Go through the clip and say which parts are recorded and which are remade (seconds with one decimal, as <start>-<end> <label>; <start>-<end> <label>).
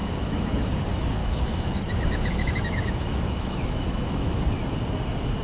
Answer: 0.0-0.7 remade; 0.7-1.2 recorded; 1.2-4.4 remade; 4.4-5.4 recorded